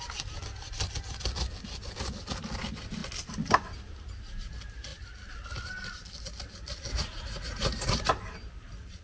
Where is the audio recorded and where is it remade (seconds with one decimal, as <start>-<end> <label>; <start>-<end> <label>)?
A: 0.0-6.9 recorded; 6.9-8.1 remade; 8.1-9.0 recorded